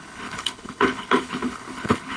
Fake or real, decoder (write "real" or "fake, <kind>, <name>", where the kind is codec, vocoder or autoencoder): fake, codec, HILCodec